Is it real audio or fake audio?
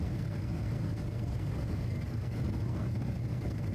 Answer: fake